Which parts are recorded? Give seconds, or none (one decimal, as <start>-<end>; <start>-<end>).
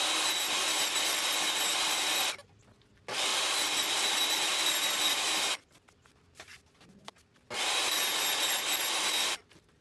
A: 0.0-9.8